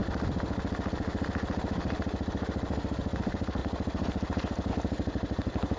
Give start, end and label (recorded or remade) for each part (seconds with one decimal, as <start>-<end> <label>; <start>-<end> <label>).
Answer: 0.0-3.2 recorded; 3.2-5.8 remade